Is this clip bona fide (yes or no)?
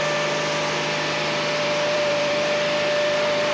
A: no